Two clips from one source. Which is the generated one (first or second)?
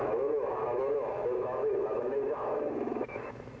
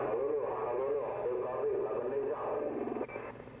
first